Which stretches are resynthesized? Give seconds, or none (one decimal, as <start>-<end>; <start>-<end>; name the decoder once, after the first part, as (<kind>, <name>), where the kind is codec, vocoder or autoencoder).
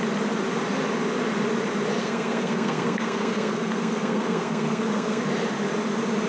2.0-5.2 (codec, SNAC)